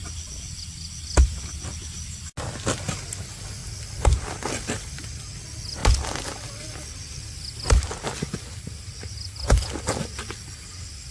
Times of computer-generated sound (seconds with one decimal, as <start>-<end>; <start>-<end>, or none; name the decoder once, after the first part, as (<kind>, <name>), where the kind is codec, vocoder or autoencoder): none